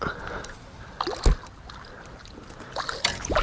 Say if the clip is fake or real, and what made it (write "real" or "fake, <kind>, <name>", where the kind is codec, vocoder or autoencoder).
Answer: real